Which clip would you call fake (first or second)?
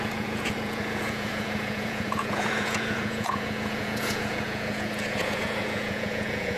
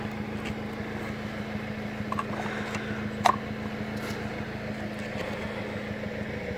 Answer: first